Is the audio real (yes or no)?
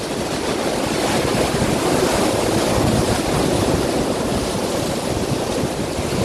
yes